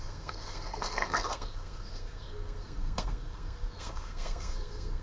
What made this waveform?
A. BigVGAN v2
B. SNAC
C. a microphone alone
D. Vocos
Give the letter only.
B